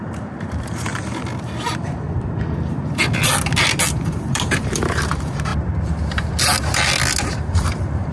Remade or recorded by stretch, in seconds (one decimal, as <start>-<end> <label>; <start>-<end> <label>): 0.0-0.9 remade; 0.9-3.9 recorded; 3.9-5.5 remade; 5.5-7.3 recorded; 7.3-8.1 remade